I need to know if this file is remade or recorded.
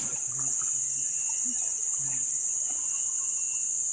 recorded